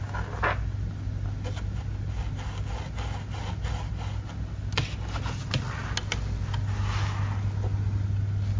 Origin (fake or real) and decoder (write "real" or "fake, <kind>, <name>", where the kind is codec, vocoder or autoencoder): real